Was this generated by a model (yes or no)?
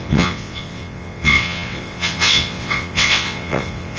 yes